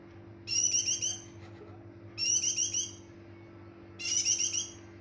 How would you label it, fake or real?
real